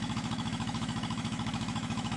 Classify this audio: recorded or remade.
remade